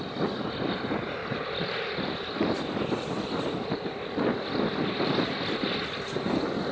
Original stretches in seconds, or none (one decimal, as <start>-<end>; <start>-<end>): 0.0-6.7